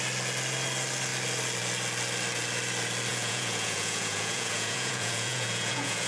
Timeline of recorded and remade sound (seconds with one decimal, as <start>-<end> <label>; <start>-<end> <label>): 0.0-3.1 recorded; 3.1-6.1 remade